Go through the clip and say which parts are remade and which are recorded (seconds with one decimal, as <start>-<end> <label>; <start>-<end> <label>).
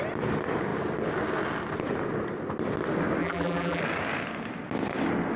0.0-3.2 recorded; 3.2-3.8 remade; 3.8-5.4 recorded